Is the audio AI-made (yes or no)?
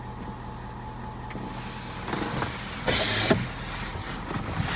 no